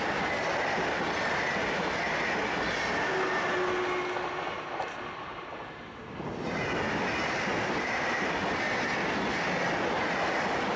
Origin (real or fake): real